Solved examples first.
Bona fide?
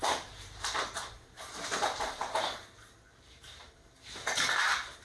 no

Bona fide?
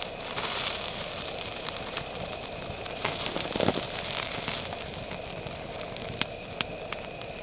no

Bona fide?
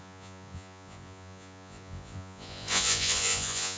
no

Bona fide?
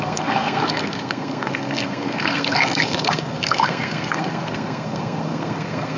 no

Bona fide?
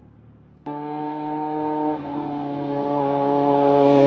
no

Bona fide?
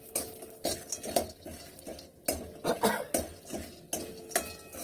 yes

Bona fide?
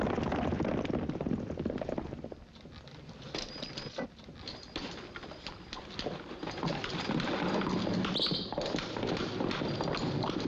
yes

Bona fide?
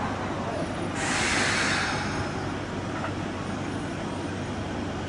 yes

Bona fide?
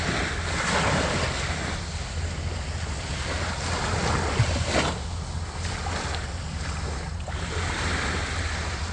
yes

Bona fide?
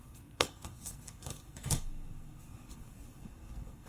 no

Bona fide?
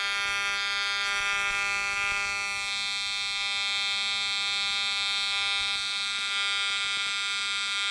yes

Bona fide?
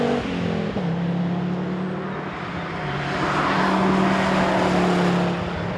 yes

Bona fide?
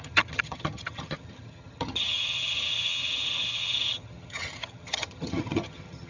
no